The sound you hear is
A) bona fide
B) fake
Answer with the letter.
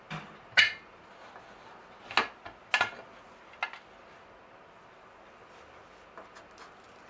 A